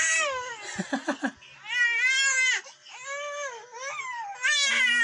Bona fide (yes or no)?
yes